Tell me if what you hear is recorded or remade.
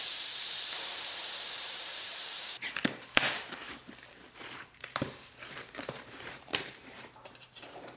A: remade